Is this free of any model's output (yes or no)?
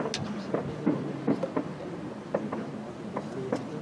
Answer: yes